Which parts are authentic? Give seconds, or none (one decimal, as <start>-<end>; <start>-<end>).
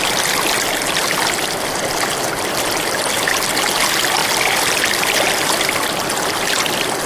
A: 0.0-4.2; 6.3-7.1